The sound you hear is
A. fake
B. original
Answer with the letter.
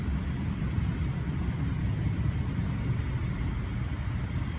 B